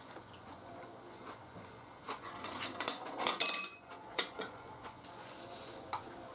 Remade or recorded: remade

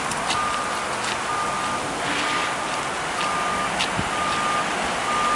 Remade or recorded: recorded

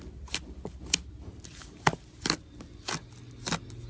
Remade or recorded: recorded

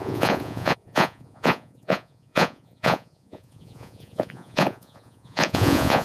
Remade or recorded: remade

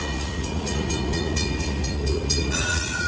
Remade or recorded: remade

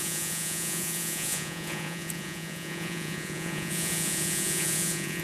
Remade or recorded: remade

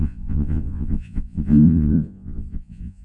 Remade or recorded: remade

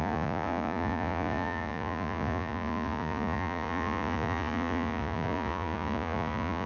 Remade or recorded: remade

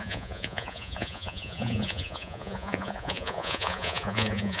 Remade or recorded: remade